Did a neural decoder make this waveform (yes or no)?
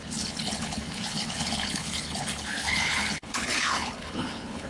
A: yes